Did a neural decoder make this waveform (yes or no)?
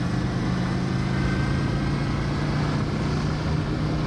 no